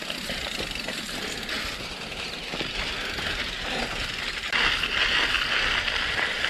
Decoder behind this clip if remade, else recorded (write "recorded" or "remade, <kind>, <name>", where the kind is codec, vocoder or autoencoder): recorded